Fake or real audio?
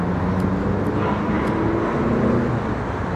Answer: real